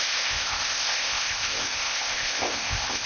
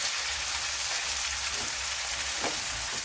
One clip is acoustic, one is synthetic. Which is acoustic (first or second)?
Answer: second